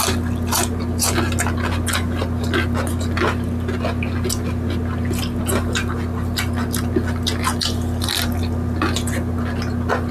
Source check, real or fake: real